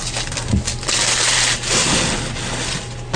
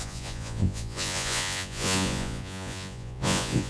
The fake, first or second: second